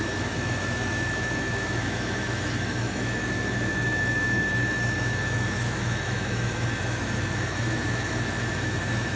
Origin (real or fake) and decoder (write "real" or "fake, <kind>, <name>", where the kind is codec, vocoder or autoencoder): fake, autoencoder, DAC-VAE